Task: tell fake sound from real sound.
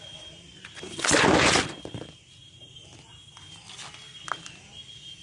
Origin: real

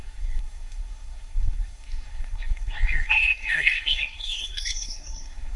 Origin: fake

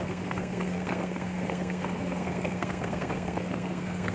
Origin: fake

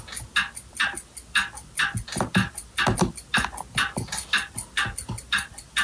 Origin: real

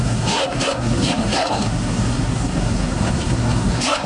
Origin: fake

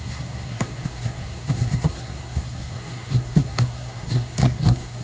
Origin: fake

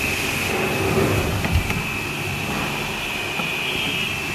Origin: real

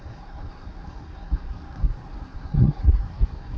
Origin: fake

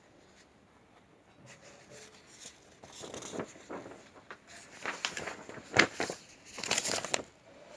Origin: real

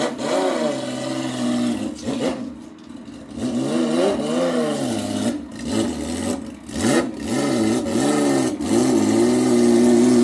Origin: real